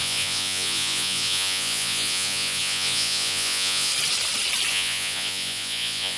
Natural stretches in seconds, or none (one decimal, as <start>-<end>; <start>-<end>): 3.9-4.7